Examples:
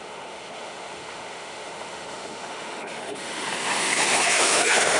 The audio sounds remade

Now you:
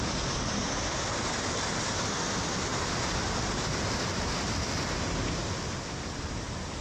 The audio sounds recorded